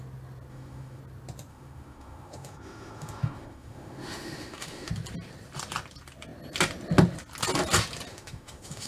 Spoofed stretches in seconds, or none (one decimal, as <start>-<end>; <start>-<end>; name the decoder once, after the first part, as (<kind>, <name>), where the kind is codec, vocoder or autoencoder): 0.5-1.0 (autoencoder, DAC-VAE); 1.5-4.9; 8.1-8.9